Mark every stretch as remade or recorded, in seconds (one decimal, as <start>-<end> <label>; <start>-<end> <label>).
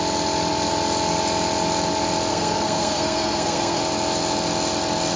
0.0-2.3 recorded; 2.3-3.8 remade; 3.8-5.2 recorded